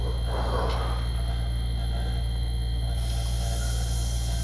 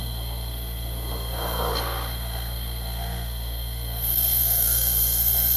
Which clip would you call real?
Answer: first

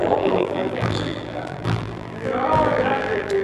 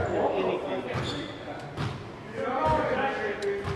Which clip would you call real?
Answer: second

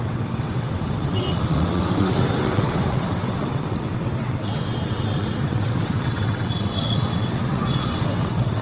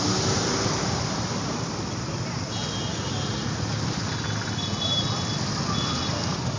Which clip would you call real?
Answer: second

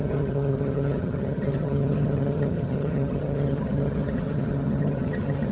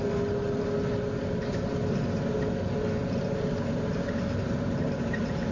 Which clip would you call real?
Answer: second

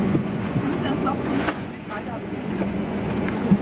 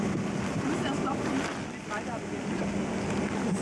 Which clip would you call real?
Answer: second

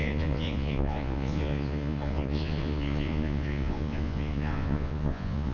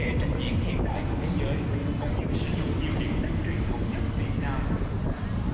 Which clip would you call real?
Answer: second